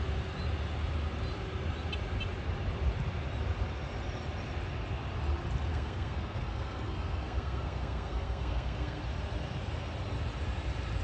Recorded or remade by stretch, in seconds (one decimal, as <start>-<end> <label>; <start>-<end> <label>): 0.0-5.7 recorded; 5.7-9.0 remade; 9.0-11.0 recorded